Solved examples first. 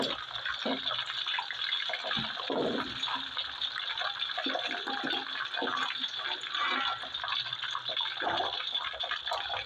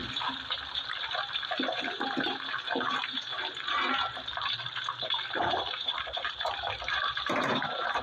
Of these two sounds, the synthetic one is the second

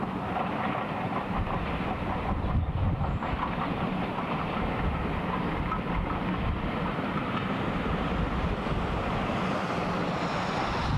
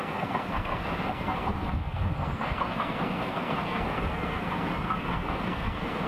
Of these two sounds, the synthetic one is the second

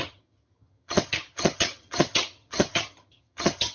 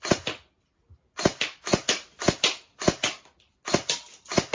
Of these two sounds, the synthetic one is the first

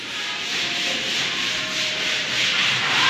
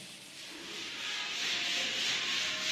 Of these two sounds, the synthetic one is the first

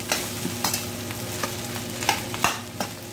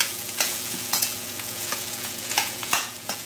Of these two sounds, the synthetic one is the second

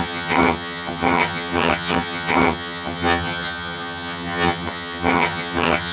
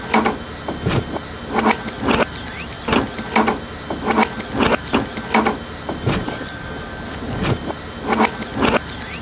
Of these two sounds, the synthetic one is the first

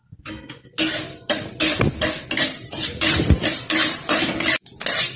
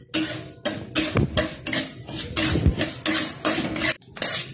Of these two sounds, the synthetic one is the first